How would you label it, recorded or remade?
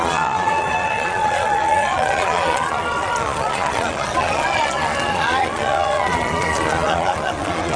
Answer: remade